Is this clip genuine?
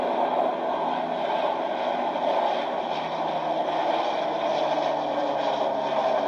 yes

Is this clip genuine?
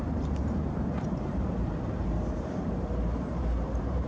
no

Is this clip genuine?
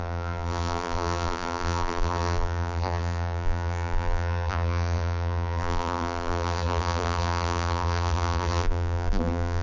no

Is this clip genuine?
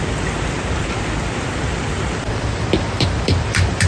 no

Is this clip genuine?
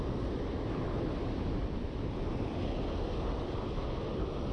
yes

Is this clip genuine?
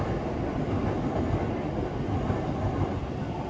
yes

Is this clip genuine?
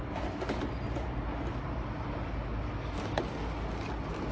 yes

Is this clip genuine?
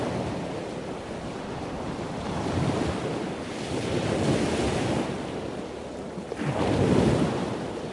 yes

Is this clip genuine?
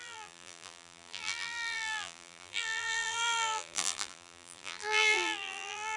no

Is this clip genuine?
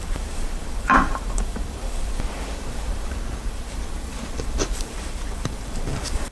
no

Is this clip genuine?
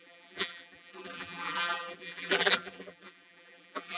no